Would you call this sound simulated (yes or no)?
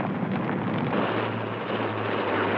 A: no